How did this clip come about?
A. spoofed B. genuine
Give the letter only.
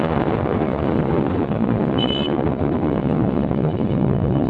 A